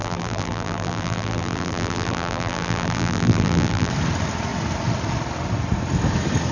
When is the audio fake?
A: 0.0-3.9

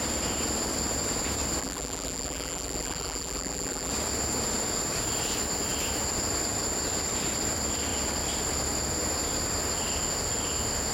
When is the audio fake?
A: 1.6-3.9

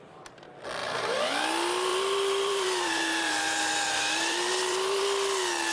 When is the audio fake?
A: 0.8-1.3; 1.9-5.0

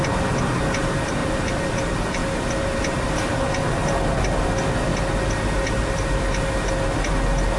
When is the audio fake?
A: 1.2-1.7